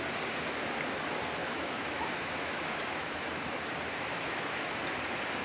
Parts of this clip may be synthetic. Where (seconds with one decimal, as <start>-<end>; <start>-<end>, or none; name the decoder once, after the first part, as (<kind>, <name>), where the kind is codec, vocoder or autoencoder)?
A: 1.4-3.5 (autoencoder, DAC-VAE); 4.1-4.7